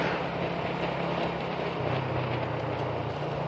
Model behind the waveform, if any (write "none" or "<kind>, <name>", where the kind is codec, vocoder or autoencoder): none